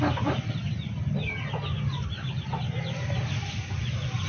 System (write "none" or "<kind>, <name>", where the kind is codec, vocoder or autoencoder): none